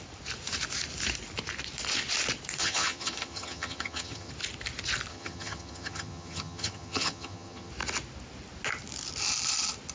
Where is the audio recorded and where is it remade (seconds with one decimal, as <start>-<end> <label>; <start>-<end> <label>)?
0.0-2.6 recorded; 2.6-4.3 remade; 4.3-5.1 recorded; 5.1-7.7 remade; 7.7-9.9 recorded